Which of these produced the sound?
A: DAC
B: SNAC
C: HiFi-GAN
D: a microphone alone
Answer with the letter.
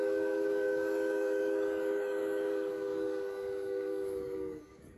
A